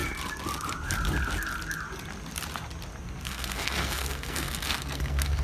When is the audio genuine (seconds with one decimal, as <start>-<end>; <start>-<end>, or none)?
0.0-3.0